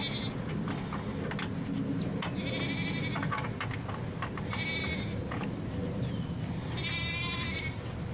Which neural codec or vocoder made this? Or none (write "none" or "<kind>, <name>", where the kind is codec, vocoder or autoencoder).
none